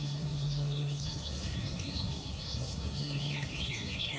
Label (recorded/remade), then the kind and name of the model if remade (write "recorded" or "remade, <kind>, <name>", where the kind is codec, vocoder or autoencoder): remade, codec, SNAC